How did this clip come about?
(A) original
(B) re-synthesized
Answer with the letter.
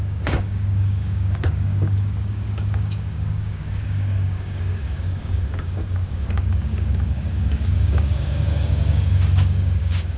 B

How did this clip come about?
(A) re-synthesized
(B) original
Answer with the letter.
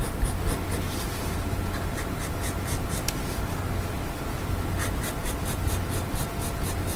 B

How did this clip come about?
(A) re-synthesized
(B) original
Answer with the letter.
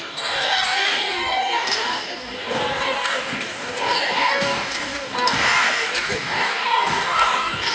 A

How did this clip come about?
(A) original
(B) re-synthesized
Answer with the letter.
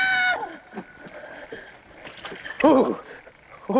A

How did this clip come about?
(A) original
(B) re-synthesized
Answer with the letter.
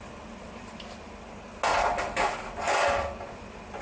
A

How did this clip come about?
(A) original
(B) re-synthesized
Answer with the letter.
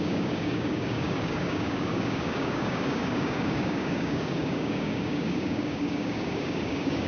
B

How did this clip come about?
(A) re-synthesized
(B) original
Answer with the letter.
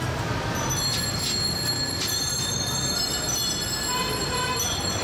B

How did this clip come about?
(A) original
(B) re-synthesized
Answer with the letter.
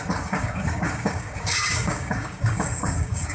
B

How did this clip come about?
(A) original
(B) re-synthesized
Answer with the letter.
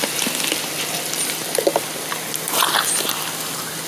A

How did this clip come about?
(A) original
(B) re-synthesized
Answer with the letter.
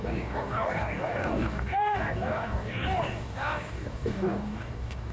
B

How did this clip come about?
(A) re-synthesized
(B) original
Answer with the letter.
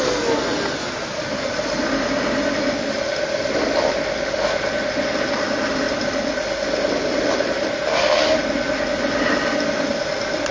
B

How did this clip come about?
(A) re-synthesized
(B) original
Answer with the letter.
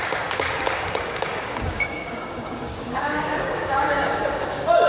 A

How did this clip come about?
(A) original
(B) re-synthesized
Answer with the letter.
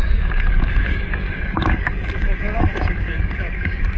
B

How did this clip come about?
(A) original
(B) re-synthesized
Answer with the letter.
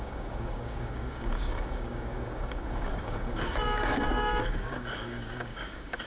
B